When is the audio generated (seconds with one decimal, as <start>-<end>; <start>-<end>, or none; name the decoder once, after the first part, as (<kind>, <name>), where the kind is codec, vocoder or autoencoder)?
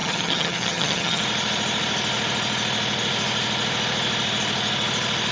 0.0-1.2 (vocoder, HiFi-GAN)